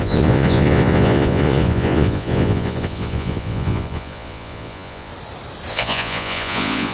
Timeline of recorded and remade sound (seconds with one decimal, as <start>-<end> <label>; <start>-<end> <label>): 0.0-5.1 remade; 5.1-5.7 recorded; 5.7-6.9 remade